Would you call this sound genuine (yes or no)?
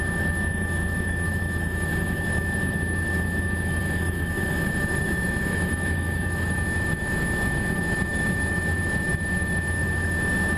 no